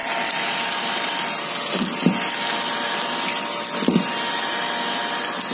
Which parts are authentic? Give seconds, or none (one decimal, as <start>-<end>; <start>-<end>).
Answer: 0.0-5.5

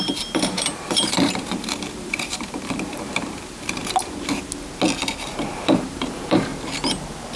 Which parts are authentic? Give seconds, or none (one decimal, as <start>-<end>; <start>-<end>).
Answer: 3.8-5.5; 6.5-7.4

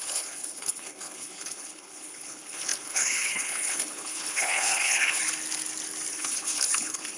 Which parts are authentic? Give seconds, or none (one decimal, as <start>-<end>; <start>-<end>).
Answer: 5.2-6.1

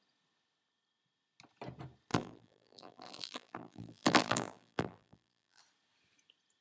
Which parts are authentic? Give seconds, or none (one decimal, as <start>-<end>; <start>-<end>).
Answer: 0.0-2.1; 5.6-6.6

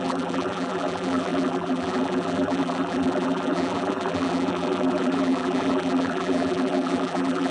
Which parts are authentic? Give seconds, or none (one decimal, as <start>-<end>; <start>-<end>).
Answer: none

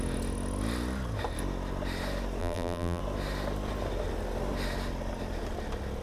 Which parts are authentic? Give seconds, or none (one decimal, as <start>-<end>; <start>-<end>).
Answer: 0.0-2.4; 3.0-6.0

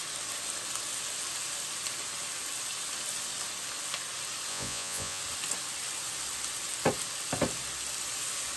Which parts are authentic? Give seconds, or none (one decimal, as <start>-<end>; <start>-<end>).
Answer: 0.0-4.5; 5.2-8.6

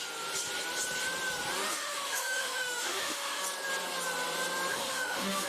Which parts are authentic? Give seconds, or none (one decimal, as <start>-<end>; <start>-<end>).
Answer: 0.0-1.7; 3.4-4.7